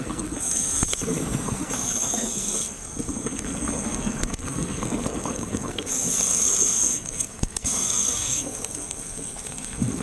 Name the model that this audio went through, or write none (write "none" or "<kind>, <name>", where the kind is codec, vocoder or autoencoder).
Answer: codec, SNAC